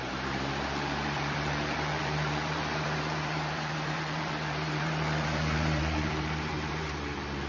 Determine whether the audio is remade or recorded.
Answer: remade